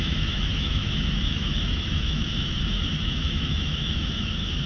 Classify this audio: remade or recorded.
remade